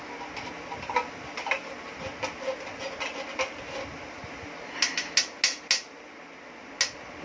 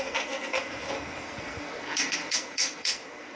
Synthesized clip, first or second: second